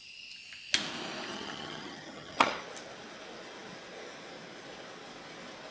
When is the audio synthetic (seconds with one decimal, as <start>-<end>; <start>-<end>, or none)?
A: 1.3-2.5